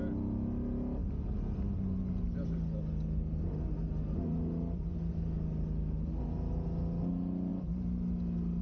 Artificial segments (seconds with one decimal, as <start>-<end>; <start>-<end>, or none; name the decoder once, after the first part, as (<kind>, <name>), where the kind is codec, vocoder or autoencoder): none